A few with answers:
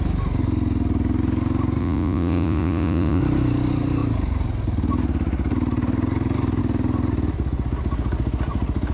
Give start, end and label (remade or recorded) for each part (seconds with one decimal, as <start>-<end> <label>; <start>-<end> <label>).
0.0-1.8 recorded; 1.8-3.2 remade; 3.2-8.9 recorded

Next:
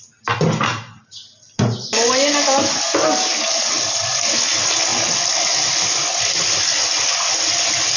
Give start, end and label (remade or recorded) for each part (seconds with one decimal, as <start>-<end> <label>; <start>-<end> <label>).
0.0-8.0 recorded

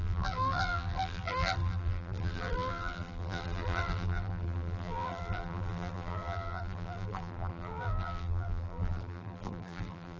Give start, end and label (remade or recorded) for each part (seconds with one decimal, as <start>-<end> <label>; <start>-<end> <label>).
0.0-10.2 remade

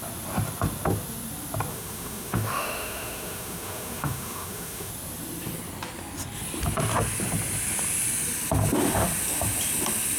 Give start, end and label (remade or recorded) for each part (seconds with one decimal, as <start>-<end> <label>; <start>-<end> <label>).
0.0-1.7 recorded; 1.7-4.9 remade; 4.9-10.2 recorded

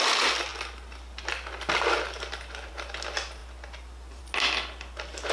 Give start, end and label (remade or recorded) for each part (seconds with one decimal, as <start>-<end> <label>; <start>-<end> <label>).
0.0-5.3 recorded

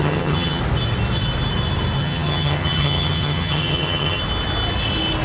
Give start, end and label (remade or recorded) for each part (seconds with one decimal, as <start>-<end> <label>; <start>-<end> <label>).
0.0-0.6 remade; 0.6-2.0 recorded; 2.0-4.2 remade; 4.2-5.2 recorded

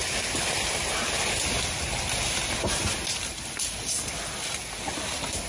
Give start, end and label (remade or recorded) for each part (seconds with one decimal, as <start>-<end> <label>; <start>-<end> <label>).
0.0-5.5 recorded